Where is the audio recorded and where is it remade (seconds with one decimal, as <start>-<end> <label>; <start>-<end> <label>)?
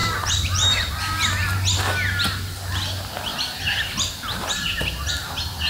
0.0-0.9 remade; 0.9-5.7 recorded